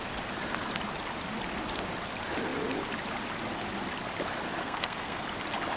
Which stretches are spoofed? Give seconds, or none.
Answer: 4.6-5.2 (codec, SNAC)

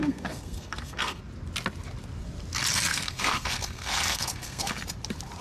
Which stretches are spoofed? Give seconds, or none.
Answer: 0.0-1.2 (codec, SNAC); 2.9-4.7

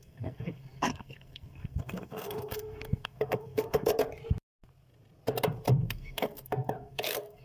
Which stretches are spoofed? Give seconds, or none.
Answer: 0.0-3.9 (codec, SNAC); 5.7-7.4

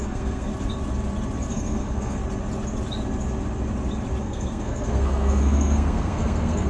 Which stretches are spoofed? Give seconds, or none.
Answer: 0.0-0.5 (codec, SNAC); 1.5-2.2; 4.2-6.7

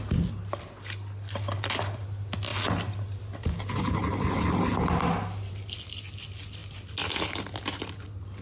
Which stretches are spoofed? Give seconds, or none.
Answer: none

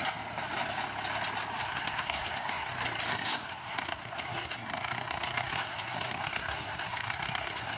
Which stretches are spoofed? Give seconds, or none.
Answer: 1.6-2.7 (codec, SNAC); 3.1-7.8

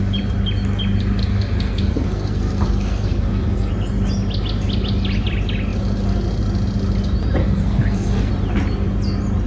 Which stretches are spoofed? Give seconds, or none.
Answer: 1.2-3.7 (codec, SNAC); 7.4-8.3

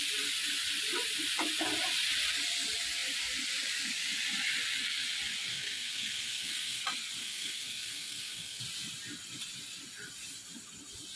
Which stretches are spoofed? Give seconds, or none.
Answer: 5.5-6.8 (codec, SNAC); 7.2-8.6